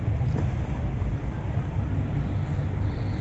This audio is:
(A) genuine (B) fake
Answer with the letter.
A